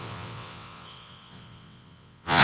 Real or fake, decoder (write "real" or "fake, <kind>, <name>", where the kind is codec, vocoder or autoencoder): fake, vocoder, WaveNeXt